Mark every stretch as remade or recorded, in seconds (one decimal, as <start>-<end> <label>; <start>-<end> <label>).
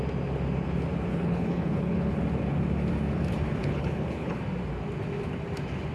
0.0-1.1 recorded; 1.1-2.2 remade; 2.2-3.6 recorded; 3.6-4.4 remade; 4.4-5.9 recorded